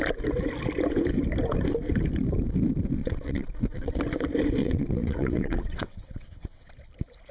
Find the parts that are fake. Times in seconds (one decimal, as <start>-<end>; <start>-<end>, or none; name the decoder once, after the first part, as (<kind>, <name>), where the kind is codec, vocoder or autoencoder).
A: 3.0-4.0 (vocoder, WaveNeXt); 4.6-6.7